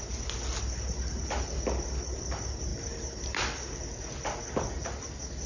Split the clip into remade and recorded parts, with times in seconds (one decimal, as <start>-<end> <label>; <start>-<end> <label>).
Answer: 0.0-5.5 recorded